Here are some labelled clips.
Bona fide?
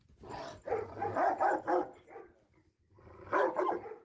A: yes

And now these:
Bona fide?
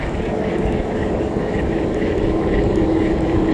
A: no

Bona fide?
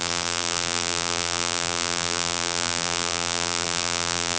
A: no